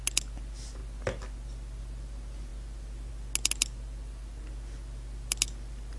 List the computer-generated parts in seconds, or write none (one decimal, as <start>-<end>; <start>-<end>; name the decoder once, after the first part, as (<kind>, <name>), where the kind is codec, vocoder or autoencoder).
none